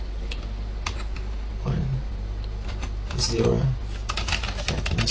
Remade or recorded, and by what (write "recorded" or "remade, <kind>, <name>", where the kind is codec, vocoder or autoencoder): recorded